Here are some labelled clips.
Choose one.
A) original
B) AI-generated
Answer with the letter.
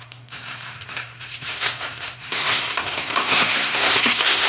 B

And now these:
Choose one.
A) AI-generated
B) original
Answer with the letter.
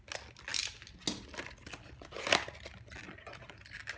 B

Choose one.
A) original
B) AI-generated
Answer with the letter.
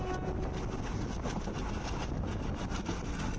A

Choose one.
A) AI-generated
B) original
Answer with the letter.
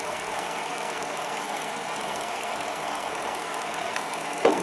A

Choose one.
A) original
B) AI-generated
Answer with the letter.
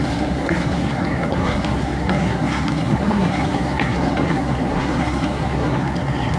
B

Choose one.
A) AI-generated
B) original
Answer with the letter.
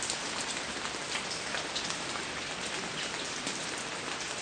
B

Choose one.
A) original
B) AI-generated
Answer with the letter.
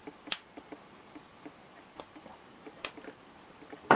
A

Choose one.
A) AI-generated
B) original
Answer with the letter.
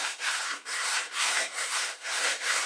A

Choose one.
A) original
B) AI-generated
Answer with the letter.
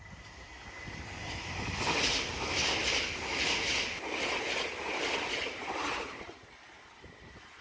A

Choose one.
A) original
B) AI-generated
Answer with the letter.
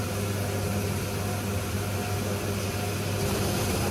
A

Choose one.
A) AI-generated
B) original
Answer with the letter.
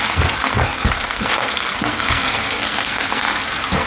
A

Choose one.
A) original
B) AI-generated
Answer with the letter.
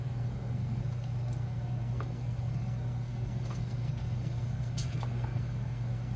B